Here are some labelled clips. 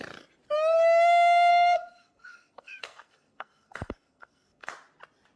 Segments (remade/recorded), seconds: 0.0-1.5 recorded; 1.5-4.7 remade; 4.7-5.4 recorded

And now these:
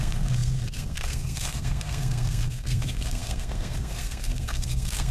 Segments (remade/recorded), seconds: 0.0-5.1 remade

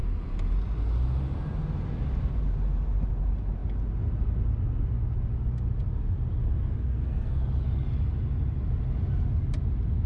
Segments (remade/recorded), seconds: 0.0-6.4 recorded; 6.4-7.4 remade; 7.4-10.1 recorded

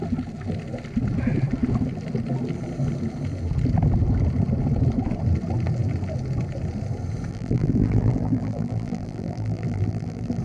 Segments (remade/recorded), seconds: 0.0-7.3 recorded; 7.3-10.4 remade

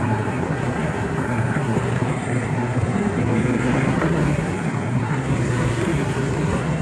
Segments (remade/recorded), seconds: 0.0-6.8 remade

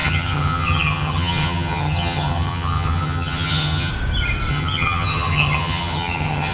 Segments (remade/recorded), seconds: 0.0-3.9 remade; 3.9-4.5 recorded; 4.5-6.5 remade

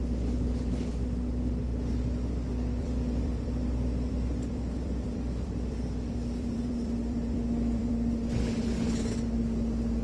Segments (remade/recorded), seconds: 0.0-2.8 recorded; 2.8-7.9 remade; 7.9-10.0 recorded

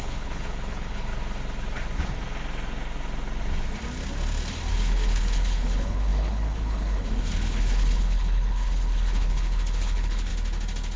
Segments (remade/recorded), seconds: 0.0-1.1 remade; 1.1-4.7 recorded; 4.7-10.3 remade; 10.3-11.0 recorded